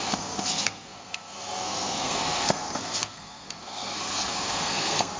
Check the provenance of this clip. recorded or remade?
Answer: remade